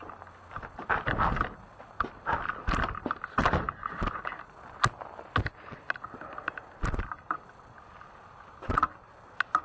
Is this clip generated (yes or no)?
no